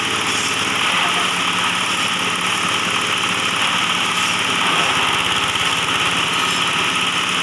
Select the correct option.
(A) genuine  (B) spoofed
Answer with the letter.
A